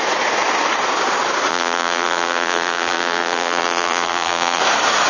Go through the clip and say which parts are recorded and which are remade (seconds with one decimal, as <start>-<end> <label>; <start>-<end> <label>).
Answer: 0.0-1.5 recorded; 1.5-4.6 remade; 4.6-5.1 recorded